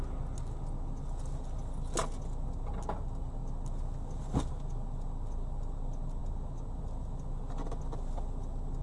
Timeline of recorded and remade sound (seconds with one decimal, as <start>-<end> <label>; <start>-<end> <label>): 0.0-8.8 recorded